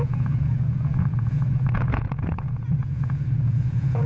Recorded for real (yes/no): no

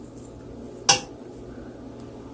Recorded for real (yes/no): yes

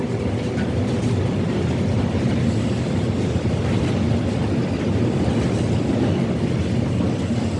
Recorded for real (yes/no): yes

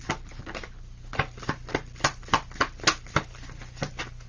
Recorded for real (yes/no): yes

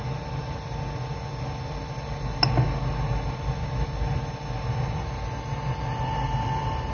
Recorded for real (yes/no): yes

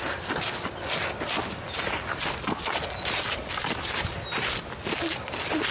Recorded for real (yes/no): yes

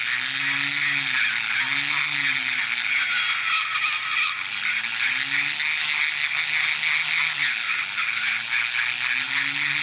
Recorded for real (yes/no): yes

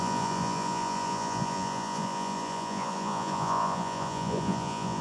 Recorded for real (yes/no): no